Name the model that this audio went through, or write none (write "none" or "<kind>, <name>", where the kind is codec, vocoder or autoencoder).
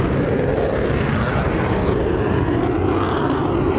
none